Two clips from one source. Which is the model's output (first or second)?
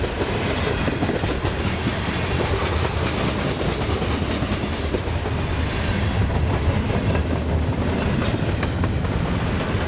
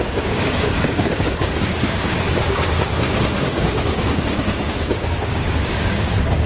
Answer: second